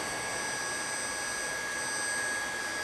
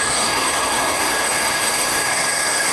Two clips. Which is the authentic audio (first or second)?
first